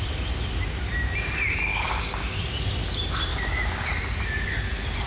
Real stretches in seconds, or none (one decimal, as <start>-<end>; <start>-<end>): 0.0-1.7; 2.4-3.3; 3.9-5.1